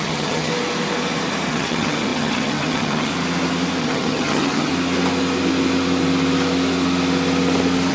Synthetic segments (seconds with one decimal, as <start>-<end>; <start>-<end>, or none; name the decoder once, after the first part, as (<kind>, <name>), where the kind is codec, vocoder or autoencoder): 0.0-0.5 (vocoder, HiFi-GAN); 1.5-3.1; 3.8-4.7